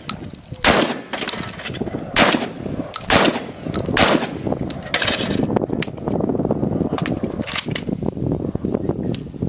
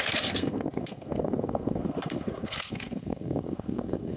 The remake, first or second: second